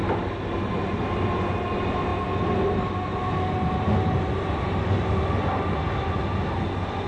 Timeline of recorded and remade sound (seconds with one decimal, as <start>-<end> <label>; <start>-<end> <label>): 0.0-7.1 recorded